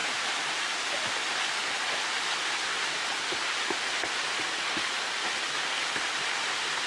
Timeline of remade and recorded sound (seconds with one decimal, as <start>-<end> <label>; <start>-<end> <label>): 0.0-0.9 remade; 0.9-6.9 recorded

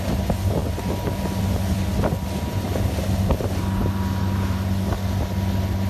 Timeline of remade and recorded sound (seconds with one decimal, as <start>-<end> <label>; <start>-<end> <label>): 0.0-5.9 recorded

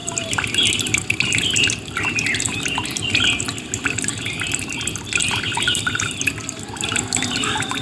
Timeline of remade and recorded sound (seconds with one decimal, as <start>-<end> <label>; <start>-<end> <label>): 0.0-7.8 recorded

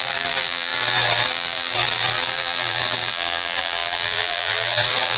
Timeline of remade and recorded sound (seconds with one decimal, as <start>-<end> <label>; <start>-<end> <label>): 0.0-5.2 remade

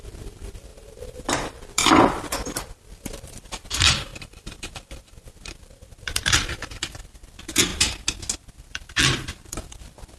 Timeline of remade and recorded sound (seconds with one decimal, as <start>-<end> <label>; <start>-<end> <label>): 0.0-7.7 remade; 7.7-8.5 recorded; 8.5-10.2 remade

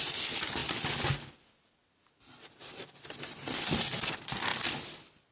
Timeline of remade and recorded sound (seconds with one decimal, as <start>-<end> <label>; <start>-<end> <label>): 0.0-0.6 remade; 0.6-2.1 recorded; 2.1-4.5 remade; 4.5-5.3 recorded

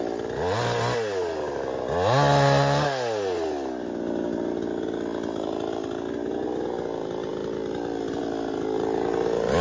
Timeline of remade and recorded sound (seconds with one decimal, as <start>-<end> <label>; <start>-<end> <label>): 0.0-7.3 recorded; 7.3-8.2 remade; 8.2-9.6 recorded

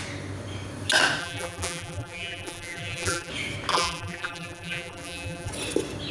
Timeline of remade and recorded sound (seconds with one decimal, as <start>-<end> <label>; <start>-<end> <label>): 0.0-1.2 recorded; 1.2-3.3 remade; 3.3-3.7 recorded; 3.7-5.5 remade; 5.5-6.1 recorded